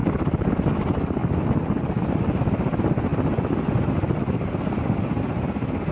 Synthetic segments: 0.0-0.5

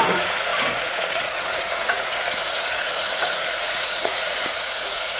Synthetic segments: 0.0-5.2

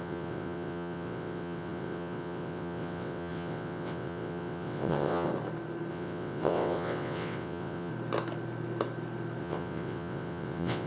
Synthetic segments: 0.0-5.3; 5.9-7.9; 9.4-10.9

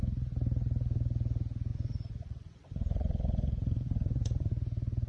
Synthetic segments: 1.7-4.5

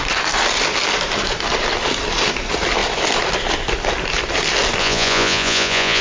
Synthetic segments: 4.8-6.0

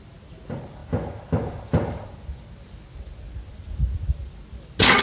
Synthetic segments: none

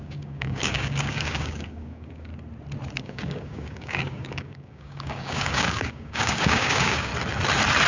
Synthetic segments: 0.0-2.3; 3.0-7.1